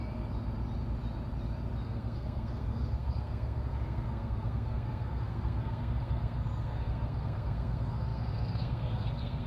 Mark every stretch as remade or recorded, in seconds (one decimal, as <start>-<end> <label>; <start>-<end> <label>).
0.0-1.8 recorded; 1.8-9.5 remade